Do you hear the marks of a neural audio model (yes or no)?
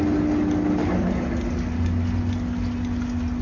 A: no